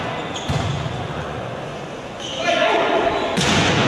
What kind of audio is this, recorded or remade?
remade